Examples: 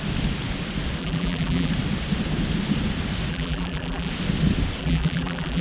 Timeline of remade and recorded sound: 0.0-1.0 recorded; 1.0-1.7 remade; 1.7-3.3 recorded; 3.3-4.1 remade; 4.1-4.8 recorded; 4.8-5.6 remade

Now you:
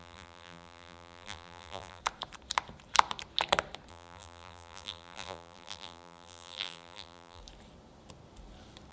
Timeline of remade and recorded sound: 0.0-2.0 remade; 2.0-3.9 recorded; 3.9-7.4 remade; 7.4-8.9 recorded

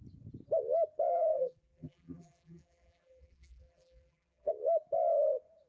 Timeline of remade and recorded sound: 0.0-1.1 recorded; 1.1-4.5 remade; 4.5-5.7 recorded